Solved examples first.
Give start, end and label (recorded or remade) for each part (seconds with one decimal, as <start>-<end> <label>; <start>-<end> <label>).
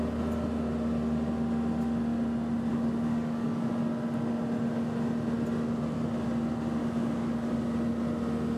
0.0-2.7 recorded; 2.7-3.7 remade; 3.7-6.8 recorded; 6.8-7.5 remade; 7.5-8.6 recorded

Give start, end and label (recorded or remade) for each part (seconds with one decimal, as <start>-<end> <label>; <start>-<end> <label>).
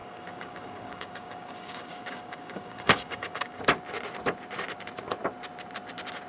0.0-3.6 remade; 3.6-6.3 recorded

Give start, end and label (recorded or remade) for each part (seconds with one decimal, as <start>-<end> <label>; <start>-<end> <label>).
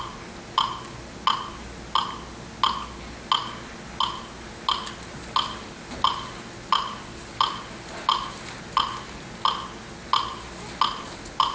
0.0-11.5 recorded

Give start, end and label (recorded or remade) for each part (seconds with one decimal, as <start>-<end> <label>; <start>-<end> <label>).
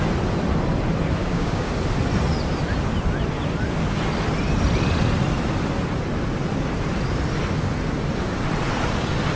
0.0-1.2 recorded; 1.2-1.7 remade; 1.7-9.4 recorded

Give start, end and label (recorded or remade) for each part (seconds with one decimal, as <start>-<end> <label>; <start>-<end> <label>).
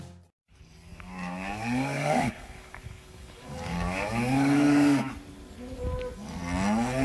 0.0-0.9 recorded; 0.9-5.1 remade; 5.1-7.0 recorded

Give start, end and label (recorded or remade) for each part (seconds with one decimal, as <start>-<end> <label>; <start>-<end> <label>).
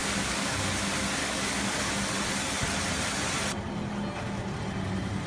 0.0-0.7 remade; 0.7-1.2 recorded; 1.2-1.9 remade; 1.9-5.3 recorded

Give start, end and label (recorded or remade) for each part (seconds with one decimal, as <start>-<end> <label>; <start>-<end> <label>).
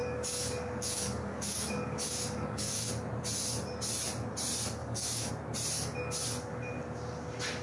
0.0-2.9 remade; 2.9-4.8 recorded; 4.8-5.3 remade; 5.3-7.6 recorded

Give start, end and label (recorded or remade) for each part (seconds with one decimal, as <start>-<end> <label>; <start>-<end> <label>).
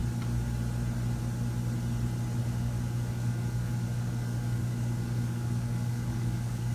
0.0-2.4 recorded; 2.4-6.7 remade